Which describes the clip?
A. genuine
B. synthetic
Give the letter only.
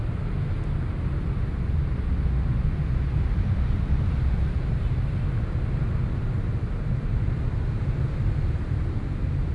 A